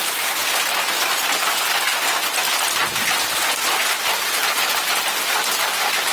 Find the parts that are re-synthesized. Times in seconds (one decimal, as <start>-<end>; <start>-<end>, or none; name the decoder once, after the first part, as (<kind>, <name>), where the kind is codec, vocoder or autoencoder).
none